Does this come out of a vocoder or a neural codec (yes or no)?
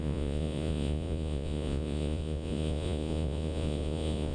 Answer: yes